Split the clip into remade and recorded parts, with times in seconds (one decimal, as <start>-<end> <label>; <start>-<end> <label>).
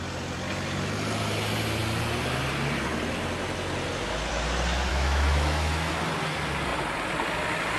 0.0-4.9 recorded; 4.9-5.9 remade; 5.9-7.8 recorded